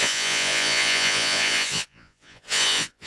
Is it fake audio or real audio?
fake